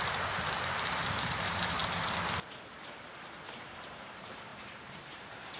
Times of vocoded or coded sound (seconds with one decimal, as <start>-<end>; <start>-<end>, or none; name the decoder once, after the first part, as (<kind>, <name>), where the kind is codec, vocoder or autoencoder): 0.0-1.8 (vocoder, BigVGAN v2); 3.5-5.6